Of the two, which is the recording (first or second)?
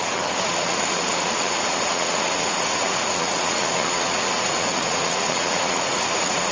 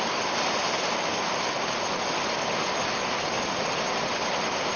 second